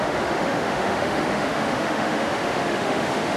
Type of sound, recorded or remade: remade